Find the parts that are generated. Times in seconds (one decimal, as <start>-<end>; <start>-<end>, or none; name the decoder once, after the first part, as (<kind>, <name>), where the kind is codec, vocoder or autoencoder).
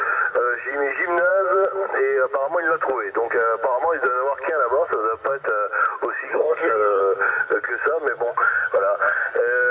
6.3-7.0 (codec, SNAC)